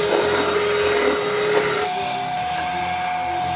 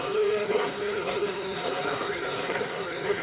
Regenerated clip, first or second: second